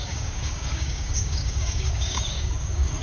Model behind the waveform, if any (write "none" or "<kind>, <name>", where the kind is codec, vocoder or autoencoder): codec, DAC